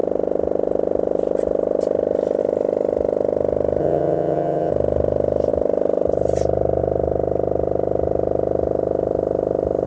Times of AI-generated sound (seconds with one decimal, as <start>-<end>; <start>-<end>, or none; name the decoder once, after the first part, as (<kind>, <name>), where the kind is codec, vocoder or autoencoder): 3.8-4.7 (vocoder, HiFi-GAN)